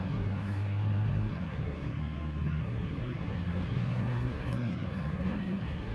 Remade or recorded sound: remade